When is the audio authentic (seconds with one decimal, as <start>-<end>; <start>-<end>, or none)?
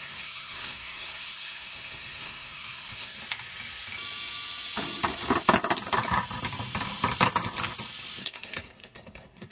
3.2-8.2